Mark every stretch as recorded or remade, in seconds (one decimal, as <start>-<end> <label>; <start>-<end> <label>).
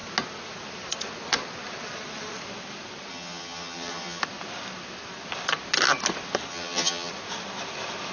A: 0.0-3.1 recorded; 3.1-4.2 remade; 4.2-6.5 recorded; 6.5-7.1 remade; 7.1-8.1 recorded